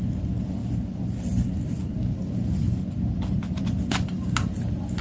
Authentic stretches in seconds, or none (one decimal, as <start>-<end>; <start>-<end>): 0.0-5.0